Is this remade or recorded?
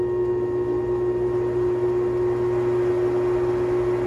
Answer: recorded